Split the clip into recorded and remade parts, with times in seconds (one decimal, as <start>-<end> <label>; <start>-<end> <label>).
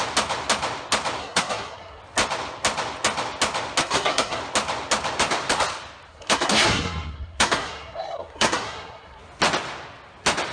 0.0-1.2 recorded; 1.2-2.0 remade; 2.0-3.8 recorded; 3.8-4.4 remade; 4.4-6.1 recorded; 6.1-9.2 remade; 9.2-10.5 recorded